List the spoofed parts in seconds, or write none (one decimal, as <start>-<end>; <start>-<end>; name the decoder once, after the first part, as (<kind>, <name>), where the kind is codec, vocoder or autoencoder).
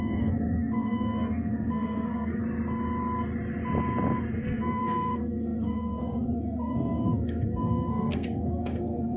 0.0-2.4 (codec, SNAC); 4.3-9.2